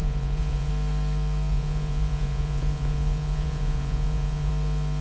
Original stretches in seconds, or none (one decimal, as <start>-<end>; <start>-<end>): 0.7-1.5; 4.5-5.0